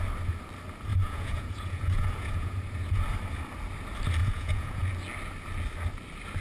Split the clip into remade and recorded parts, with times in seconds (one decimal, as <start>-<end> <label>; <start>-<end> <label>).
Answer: 0.0-0.9 recorded; 0.9-3.0 remade; 3.0-4.2 recorded; 4.2-4.9 remade; 4.9-6.4 recorded